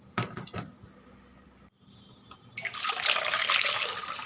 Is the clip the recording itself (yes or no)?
yes